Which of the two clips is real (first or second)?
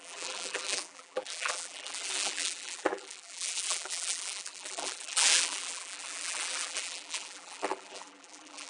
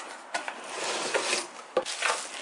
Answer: second